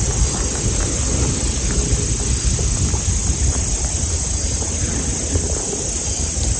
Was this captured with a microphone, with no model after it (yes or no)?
yes